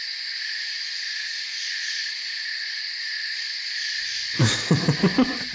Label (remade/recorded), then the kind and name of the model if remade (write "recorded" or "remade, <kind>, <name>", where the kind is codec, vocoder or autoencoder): recorded